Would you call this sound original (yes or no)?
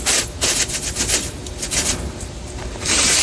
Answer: no